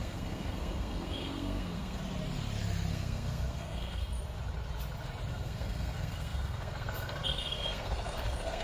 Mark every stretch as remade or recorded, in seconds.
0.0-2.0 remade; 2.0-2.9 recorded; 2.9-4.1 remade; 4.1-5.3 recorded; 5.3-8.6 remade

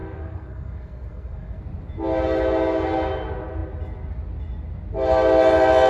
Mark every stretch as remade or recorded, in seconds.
0.0-1.6 remade; 1.6-5.9 recorded

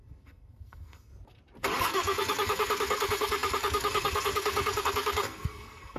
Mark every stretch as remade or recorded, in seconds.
0.0-1.1 remade; 1.1-1.8 recorded; 1.8-6.0 remade

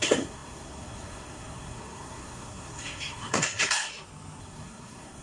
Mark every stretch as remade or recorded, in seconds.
0.0-3.9 remade; 3.9-4.4 recorded; 4.4-5.2 remade

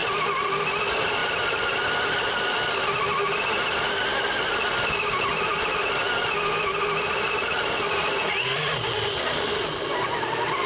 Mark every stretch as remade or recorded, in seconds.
0.0-10.7 recorded

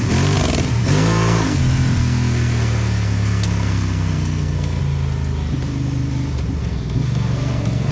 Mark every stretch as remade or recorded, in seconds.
0.0-0.8 recorded; 0.8-1.6 remade; 1.6-2.0 recorded; 2.0-4.8 remade; 4.8-6.6 recorded; 6.6-7.9 remade